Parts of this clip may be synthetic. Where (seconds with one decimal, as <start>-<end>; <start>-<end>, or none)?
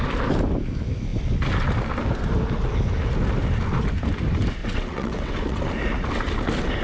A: 4.6-5.6